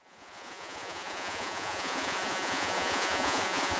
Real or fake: fake